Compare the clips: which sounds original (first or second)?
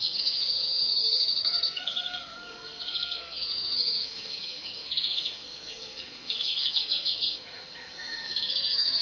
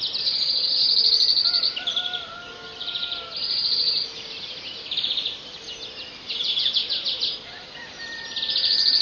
second